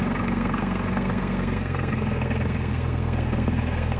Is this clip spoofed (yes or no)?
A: yes